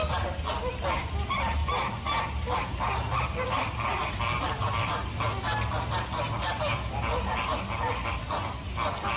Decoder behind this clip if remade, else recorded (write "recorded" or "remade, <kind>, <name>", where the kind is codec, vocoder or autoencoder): recorded